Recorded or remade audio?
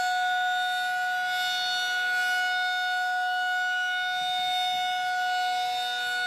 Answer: recorded